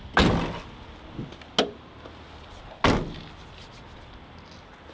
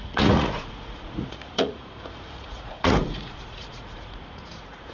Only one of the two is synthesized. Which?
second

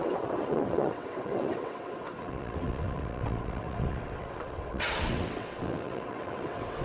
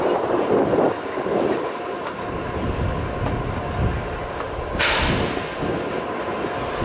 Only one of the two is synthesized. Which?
first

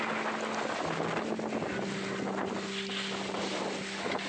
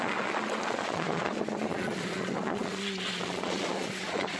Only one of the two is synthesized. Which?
second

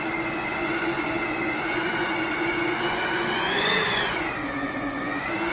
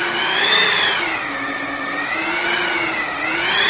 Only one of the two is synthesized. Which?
first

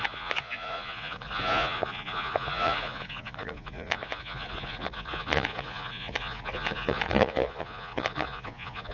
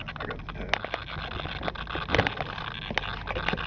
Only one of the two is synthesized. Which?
first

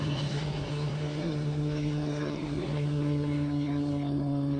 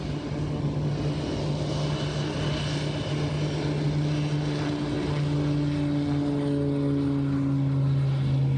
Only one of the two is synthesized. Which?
first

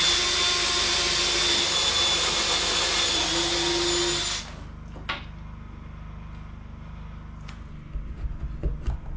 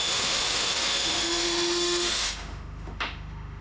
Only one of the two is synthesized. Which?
second